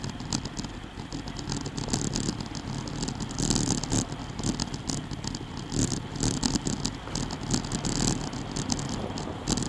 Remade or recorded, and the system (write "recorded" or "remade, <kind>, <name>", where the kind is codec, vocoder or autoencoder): recorded